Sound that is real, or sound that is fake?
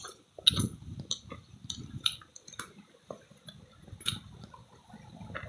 real